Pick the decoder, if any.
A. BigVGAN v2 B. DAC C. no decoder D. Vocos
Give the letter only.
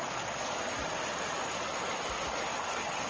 C